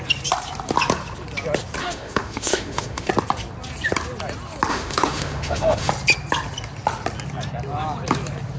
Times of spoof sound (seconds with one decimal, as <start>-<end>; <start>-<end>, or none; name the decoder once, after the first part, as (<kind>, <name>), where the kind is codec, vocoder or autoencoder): 1.8-3.1 (autoencoder, DAC-VAE); 4.7-5.9